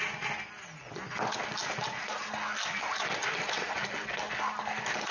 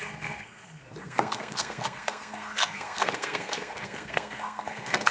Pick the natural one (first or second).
first